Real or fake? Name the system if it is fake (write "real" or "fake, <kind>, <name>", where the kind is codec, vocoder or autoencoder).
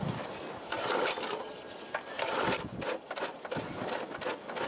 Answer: real